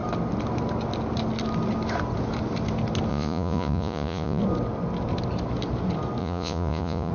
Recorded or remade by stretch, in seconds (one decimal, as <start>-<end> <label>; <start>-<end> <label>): 0.0-3.1 recorded; 3.1-4.4 remade; 4.4-6.2 recorded; 6.2-7.1 remade